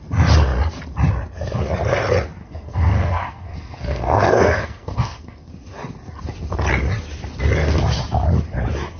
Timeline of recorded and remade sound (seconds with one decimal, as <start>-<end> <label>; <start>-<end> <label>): 0.0-2.4 recorded; 2.4-5.5 remade; 5.5-9.0 recorded